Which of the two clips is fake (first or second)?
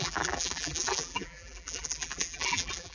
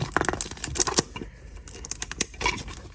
first